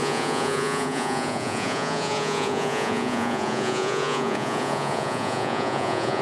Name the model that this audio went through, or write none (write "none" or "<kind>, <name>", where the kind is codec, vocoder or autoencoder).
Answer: vocoder, Vocos